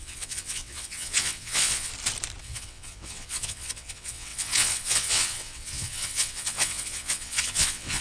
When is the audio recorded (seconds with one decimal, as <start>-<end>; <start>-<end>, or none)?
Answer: 1.9-2.4